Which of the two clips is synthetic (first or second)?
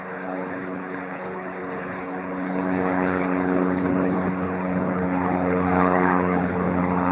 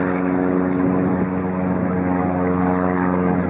first